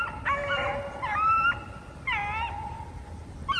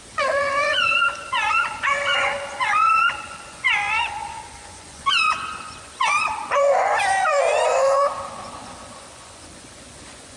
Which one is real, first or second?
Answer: first